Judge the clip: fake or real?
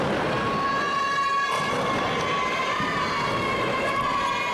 real